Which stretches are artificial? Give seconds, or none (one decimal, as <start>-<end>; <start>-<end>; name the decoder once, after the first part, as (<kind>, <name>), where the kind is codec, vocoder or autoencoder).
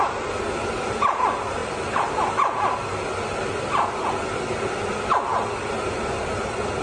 none